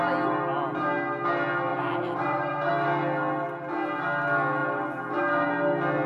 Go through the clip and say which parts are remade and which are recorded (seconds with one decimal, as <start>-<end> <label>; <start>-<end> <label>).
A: 0.0-1.7 recorded; 1.7-2.7 remade; 2.7-6.1 recorded